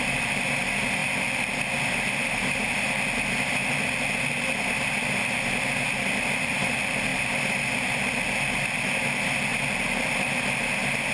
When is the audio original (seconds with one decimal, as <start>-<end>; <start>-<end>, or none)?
0.0-11.1